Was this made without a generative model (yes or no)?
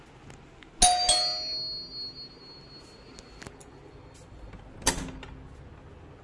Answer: yes